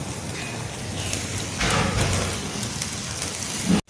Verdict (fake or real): real